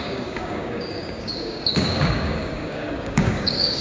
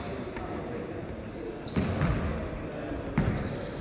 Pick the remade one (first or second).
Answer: first